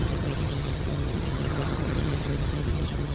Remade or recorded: remade